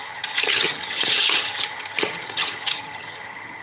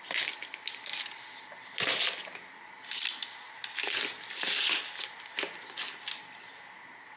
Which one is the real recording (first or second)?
second